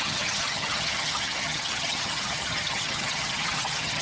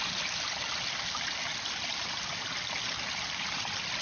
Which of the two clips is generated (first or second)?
first